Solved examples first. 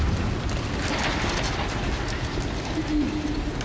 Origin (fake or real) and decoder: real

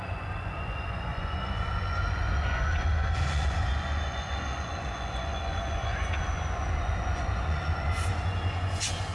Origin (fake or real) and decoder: fake, vocoder, Vocos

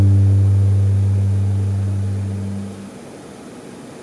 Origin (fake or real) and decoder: real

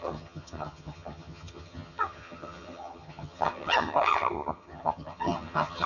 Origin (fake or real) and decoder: fake, vocoder, HiFi-GAN